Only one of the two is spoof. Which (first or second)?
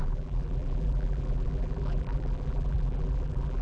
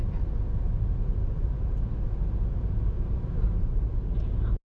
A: first